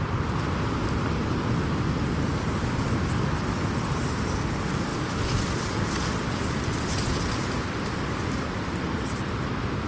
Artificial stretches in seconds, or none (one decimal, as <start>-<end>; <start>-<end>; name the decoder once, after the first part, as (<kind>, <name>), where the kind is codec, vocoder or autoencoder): none